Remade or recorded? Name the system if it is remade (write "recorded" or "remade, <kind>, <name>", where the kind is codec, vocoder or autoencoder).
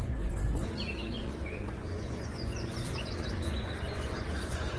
remade, vocoder, Vocos